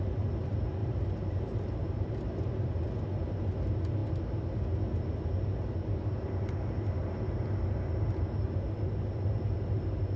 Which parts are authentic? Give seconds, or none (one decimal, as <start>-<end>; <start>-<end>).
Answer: 0.0-0.8; 2.5-10.2